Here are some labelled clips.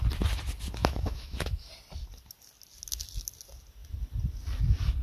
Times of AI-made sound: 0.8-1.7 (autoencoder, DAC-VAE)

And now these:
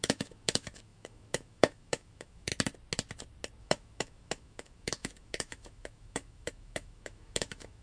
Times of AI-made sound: 0.0-2.5 (autoencoder, DAC-VAE); 3.6-7.8

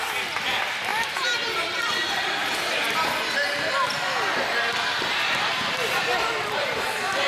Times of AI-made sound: none

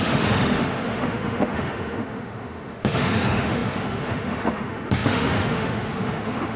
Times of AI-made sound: 0.0-6.6 (autoencoder, DAC-VAE)